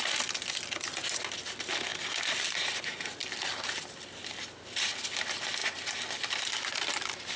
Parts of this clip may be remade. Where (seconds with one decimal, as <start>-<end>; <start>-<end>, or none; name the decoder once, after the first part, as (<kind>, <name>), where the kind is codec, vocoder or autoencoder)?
5.6-6.5 (vocoder, BigVGAN v2)